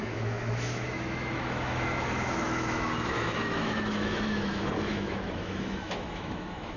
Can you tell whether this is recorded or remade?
remade